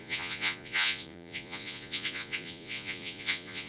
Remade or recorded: remade